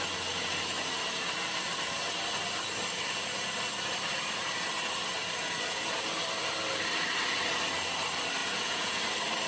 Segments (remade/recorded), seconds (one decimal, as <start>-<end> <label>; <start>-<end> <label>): 0.0-8.4 recorded; 8.4-9.0 remade; 9.0-9.5 recorded